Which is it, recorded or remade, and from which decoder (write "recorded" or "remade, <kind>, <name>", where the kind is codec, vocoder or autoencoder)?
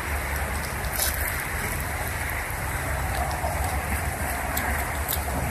recorded